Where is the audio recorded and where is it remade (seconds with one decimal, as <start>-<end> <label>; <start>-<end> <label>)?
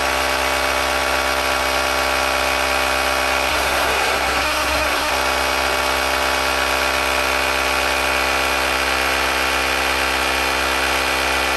0.0-3.5 recorded; 3.5-5.1 remade; 5.1-11.6 recorded